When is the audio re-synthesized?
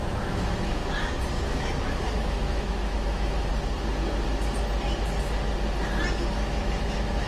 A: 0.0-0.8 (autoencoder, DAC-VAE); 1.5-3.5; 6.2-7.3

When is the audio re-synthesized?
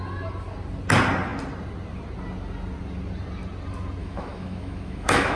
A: 4.0-5.4 (autoencoder, DAC-VAE)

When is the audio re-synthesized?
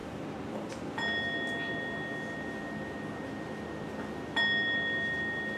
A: none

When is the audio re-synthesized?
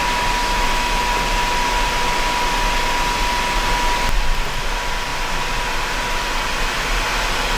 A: 0.4-1.0 (autoencoder, DAC-VAE)